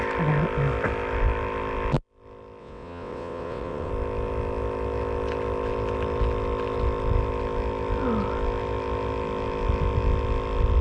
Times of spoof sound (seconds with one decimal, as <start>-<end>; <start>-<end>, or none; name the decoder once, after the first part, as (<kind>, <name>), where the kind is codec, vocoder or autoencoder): 2.6-3.9 (vocoder, WaveNeXt)